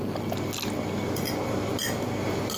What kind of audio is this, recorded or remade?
recorded